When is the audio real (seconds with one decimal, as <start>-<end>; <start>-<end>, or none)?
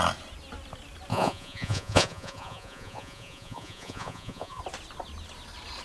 0.0-1.1; 4.6-5.8